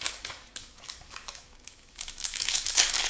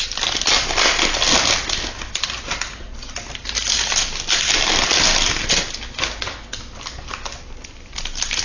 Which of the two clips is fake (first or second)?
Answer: first